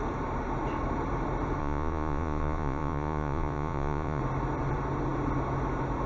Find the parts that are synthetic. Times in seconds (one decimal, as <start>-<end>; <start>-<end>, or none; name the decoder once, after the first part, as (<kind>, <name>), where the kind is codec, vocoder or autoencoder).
1.6-4.2 (vocoder, Vocos)